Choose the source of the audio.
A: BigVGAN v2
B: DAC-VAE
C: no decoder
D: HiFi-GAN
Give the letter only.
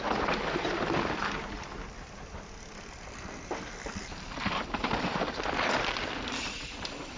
A